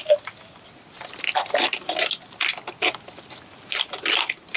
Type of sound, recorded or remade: recorded